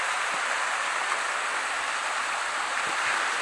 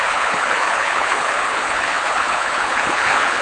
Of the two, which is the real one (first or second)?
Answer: first